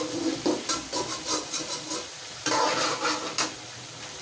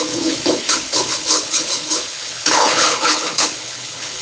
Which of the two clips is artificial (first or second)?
second